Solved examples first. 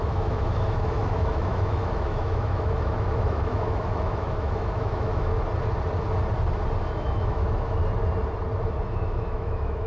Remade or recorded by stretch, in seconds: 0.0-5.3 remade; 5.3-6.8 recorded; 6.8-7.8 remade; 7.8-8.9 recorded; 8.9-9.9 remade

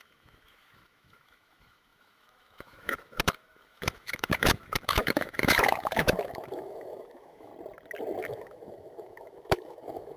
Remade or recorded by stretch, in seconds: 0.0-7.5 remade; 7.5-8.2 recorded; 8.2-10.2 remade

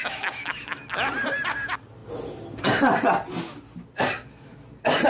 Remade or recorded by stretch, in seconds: 0.0-0.8 remade; 0.8-5.1 recorded

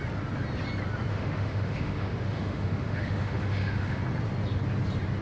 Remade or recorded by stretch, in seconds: 0.0-1.1 recorded; 1.1-4.0 remade; 4.0-5.2 recorded